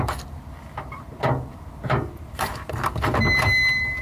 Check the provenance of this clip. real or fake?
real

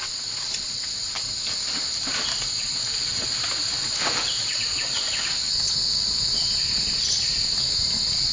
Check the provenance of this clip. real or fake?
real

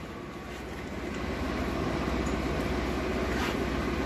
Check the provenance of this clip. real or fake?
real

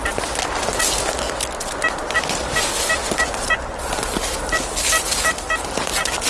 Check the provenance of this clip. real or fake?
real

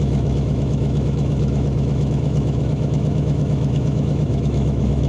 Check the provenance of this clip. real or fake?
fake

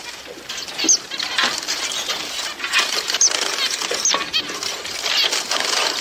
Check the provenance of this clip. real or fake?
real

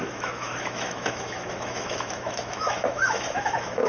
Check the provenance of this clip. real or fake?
fake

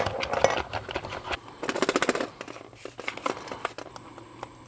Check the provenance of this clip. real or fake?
real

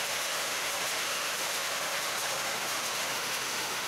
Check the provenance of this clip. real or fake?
fake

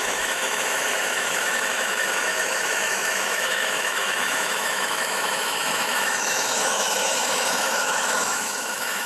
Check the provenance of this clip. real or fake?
fake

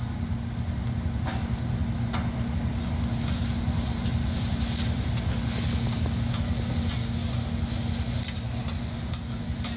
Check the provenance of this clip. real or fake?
real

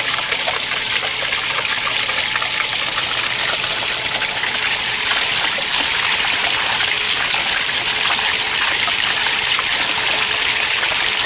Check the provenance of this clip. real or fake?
real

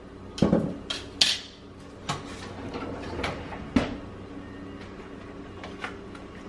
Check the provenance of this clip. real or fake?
real